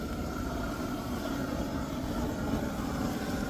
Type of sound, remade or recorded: recorded